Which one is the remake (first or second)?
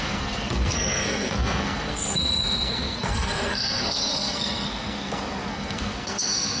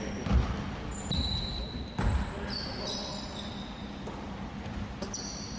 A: first